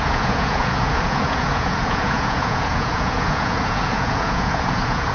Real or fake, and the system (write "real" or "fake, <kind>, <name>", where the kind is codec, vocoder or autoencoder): fake, vocoder, Vocos